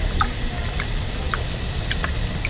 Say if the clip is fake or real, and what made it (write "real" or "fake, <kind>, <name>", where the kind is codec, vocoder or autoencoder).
real